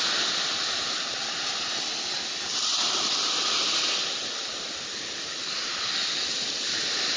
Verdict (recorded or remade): recorded